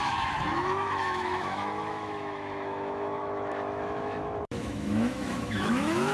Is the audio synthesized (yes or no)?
yes